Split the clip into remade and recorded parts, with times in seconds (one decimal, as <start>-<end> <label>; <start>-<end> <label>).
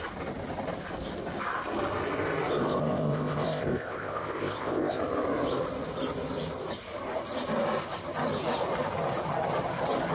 0.0-2.5 recorded; 2.5-5.0 remade; 5.0-10.1 recorded